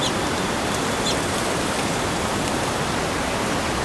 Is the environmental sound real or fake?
real